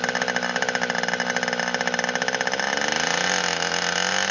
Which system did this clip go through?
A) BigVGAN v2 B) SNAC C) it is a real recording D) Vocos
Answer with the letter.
C